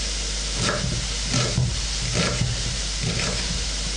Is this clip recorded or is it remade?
remade